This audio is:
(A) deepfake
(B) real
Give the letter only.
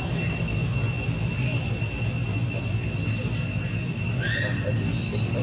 B